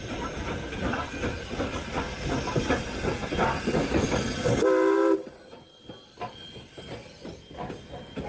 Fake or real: real